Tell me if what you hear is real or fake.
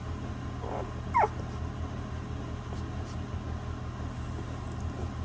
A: real